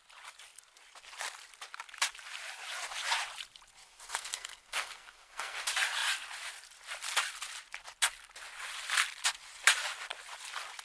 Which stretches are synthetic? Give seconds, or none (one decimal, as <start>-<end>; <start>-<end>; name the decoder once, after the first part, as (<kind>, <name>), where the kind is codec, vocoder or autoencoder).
3.8-5.6 (codec, SNAC)